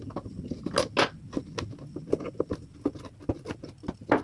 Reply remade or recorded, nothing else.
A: recorded